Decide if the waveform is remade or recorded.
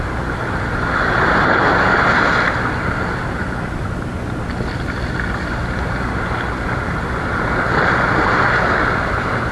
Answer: recorded